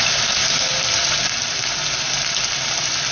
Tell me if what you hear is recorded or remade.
remade